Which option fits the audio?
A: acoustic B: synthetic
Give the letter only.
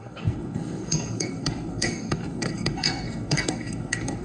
B